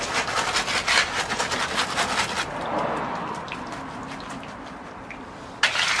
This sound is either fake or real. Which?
real